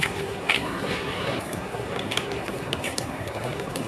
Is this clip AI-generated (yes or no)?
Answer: yes